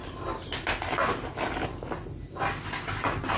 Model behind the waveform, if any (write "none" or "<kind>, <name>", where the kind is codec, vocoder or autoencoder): none